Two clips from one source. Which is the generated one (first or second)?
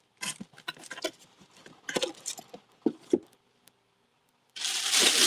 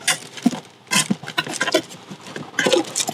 first